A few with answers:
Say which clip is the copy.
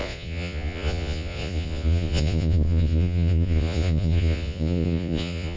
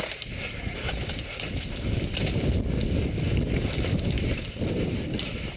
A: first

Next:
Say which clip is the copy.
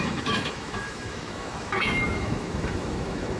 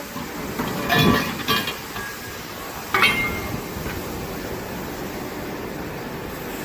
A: first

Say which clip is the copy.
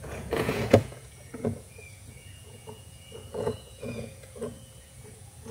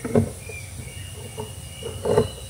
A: first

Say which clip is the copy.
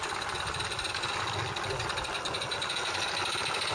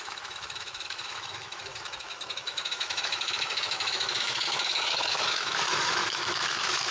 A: second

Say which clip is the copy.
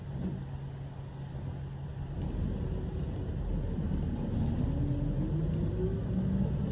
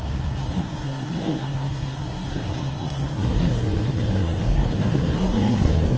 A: second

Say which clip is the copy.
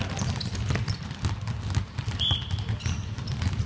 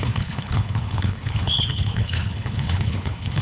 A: second